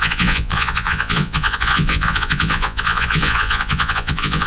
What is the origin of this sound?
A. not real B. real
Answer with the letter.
A